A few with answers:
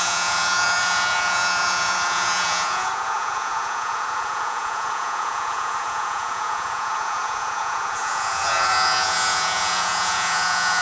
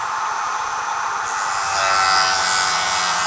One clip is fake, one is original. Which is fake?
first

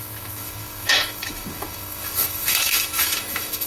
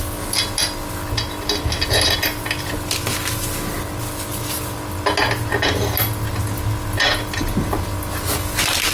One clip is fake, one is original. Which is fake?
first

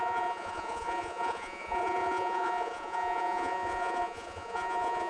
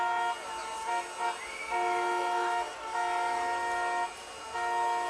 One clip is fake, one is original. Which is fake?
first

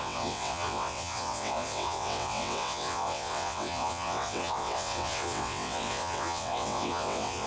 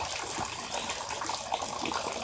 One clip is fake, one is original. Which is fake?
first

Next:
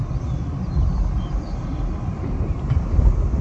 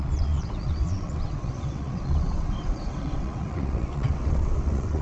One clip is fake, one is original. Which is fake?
second